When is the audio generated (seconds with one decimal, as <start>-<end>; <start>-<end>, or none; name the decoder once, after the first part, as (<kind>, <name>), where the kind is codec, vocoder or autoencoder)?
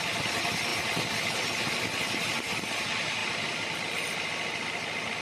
none